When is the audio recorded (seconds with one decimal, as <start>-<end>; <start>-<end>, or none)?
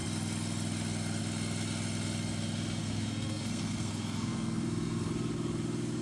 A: 0.0-2.8; 5.1-6.0